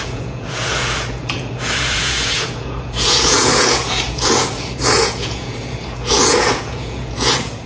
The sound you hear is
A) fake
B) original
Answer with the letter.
A